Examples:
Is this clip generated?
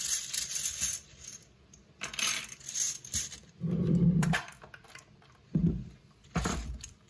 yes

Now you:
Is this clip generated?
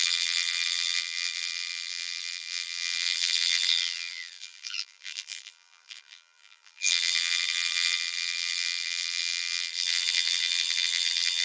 yes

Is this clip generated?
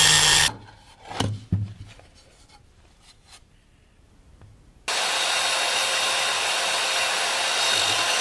no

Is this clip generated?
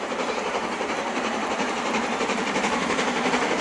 yes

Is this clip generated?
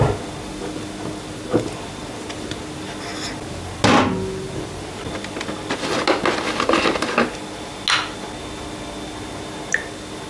no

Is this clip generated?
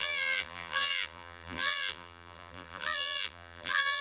yes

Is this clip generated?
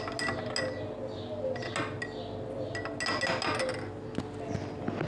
no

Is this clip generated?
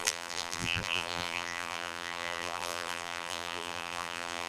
yes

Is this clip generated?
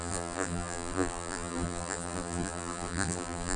yes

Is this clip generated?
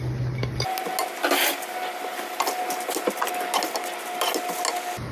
no